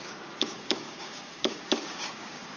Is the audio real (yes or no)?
no